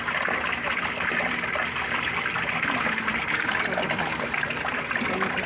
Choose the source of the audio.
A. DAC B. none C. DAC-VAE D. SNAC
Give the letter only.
B